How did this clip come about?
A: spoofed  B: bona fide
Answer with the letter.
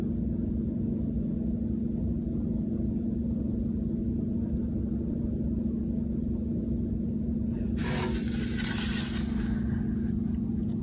B